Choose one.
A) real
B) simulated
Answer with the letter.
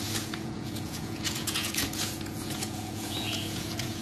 B